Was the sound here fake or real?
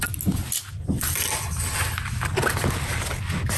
real